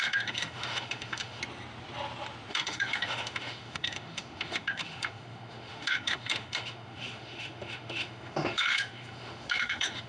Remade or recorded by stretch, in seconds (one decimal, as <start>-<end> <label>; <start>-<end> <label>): 0.0-1.4 remade; 1.4-2.5 recorded; 2.5-10.1 remade